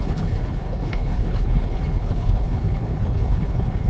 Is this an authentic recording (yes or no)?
no